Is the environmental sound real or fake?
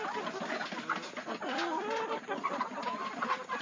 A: real